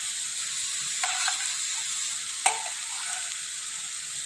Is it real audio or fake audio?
real